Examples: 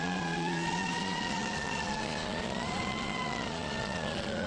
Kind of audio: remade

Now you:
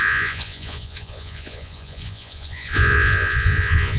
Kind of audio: remade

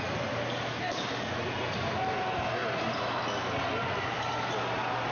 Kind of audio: recorded